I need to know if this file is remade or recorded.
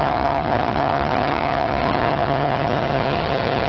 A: remade